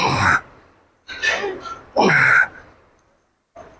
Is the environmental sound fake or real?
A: fake